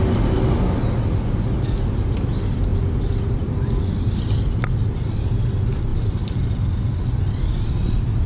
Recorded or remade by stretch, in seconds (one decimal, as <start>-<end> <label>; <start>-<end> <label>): 0.0-2.7 recorded; 2.7-4.4 remade; 4.4-5.9 recorded; 5.9-6.6 remade; 6.6-8.3 recorded